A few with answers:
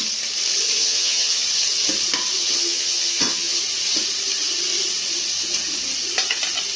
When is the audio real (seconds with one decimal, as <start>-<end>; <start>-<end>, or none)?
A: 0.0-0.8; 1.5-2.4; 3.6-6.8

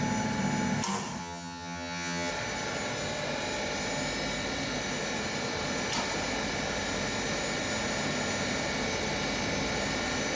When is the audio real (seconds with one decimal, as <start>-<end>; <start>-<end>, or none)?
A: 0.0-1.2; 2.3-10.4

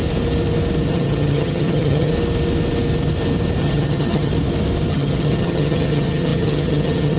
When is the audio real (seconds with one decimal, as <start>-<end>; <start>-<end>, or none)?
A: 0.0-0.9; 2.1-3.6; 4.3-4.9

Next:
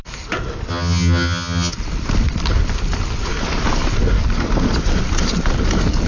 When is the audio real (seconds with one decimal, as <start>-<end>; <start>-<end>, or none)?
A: 0.0-0.7; 1.7-6.1